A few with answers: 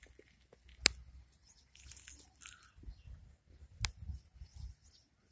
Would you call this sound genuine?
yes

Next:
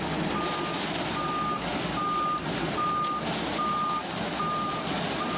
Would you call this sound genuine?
yes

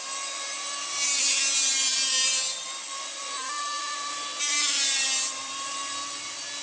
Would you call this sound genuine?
no